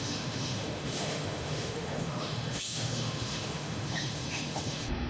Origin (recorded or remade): remade